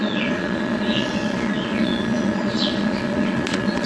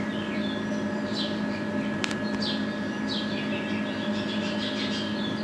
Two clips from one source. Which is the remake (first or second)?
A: first